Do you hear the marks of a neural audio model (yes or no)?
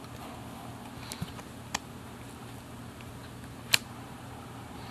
no